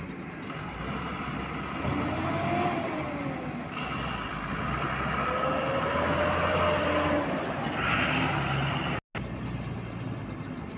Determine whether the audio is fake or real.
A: real